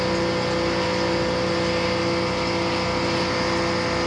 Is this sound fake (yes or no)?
no